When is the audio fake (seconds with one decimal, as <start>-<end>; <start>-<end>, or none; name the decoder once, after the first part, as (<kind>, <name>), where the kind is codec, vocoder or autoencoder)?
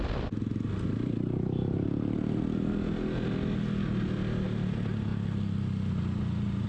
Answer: none